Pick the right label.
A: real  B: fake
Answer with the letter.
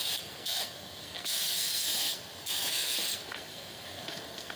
B